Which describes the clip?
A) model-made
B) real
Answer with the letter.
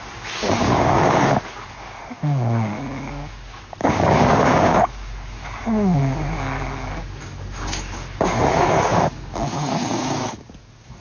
A